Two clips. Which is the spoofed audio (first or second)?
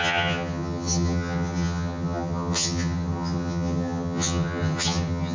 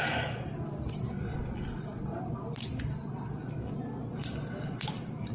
first